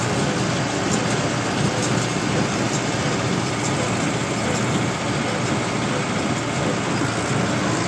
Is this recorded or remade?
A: recorded